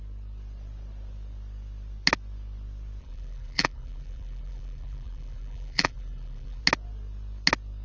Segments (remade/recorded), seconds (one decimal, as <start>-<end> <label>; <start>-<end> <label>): 0.0-3.0 recorded; 3.0-6.6 remade; 6.6-7.8 recorded

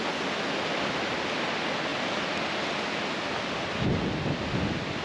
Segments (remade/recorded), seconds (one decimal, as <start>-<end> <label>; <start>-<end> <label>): 0.0-1.9 recorded; 1.9-2.6 remade; 2.6-5.0 recorded